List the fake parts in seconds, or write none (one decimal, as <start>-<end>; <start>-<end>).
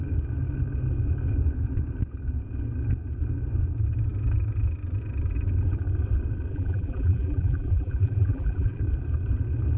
6.5-8.8